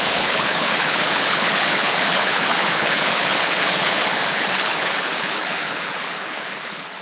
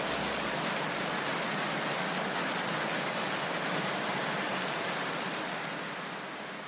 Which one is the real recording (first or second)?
second